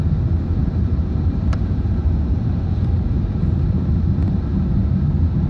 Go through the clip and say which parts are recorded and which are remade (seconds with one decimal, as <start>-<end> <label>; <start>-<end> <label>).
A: 0.0-0.6 recorded; 0.6-3.9 remade; 3.9-5.5 recorded